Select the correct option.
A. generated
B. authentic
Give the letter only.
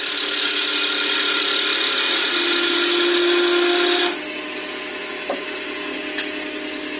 B